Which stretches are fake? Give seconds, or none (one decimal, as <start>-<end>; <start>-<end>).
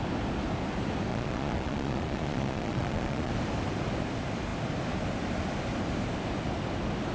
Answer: 1.1-3.3